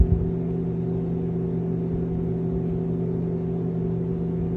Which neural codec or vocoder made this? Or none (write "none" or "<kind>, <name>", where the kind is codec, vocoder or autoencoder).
none